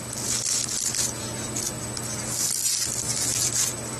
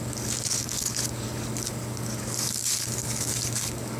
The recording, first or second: first